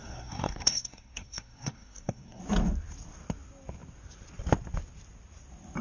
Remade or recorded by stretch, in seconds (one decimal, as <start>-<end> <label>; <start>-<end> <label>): 0.0-2.4 remade; 2.4-5.8 recorded